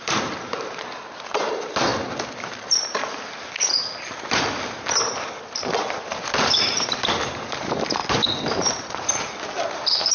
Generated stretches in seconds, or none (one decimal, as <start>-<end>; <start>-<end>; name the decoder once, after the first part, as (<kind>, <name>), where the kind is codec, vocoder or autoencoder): 0.0-1.9 (vocoder, BigVGAN v2); 6.0-8.0